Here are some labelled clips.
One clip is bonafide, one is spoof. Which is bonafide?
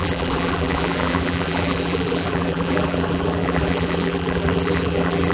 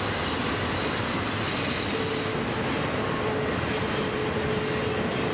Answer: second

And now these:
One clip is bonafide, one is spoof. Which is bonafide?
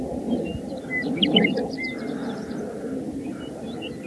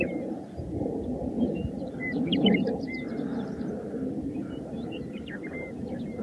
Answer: first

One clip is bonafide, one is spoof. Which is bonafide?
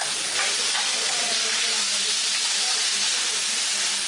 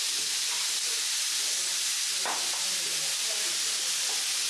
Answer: second